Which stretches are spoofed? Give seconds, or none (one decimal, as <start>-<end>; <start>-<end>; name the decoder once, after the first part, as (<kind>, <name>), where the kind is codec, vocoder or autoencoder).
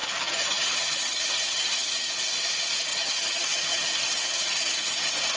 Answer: 0.0-2.1 (vocoder, HiFi-GAN); 2.9-5.0